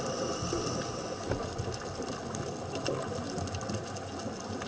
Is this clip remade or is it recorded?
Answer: recorded